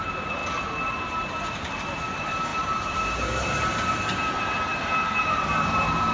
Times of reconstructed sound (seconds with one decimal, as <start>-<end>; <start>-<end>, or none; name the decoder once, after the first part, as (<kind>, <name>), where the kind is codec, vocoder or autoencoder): 0.0-0.4 (vocoder, BigVGAN v2); 1.4-4.7; 5.2-6.1

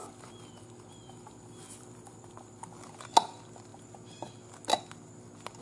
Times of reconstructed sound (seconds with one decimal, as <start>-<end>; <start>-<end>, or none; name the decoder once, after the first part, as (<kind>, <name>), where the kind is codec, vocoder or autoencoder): 0.0-3.0 (vocoder, BigVGAN v2)

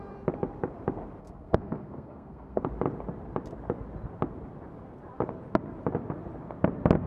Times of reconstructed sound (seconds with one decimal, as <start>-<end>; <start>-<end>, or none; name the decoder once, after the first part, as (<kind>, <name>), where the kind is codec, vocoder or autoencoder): 1.2-2.6 (codec, SNAC)

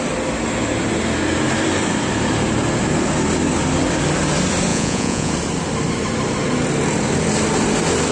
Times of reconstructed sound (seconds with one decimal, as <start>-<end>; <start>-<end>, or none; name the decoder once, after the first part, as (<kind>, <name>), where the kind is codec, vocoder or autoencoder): 4.7-5.3 (vocoder, Vocos)

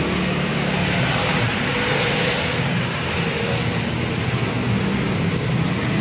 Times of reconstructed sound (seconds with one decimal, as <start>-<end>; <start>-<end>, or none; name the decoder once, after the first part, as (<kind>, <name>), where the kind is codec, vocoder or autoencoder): none

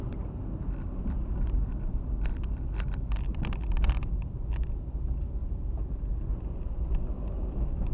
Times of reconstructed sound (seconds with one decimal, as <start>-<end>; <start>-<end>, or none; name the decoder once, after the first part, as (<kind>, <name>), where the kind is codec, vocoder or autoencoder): none

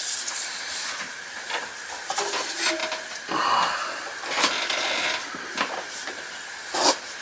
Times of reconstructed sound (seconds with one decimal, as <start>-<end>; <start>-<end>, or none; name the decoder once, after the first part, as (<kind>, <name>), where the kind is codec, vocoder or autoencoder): none

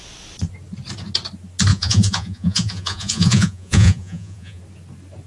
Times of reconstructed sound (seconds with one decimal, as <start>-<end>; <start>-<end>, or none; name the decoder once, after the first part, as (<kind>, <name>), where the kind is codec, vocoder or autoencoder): 1.7-4.6 (vocoder, Vocos)